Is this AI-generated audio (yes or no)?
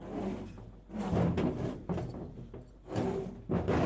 no